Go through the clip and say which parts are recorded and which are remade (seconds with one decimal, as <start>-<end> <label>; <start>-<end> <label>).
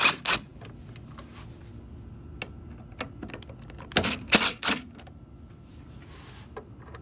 0.0-7.0 recorded